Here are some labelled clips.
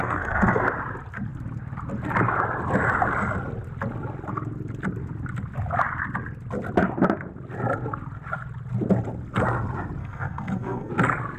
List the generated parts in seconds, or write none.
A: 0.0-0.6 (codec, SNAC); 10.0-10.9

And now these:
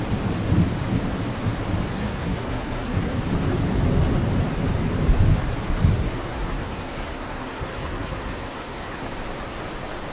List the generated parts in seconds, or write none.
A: 1.9-3.2 (codec, SNAC); 5.9-9.1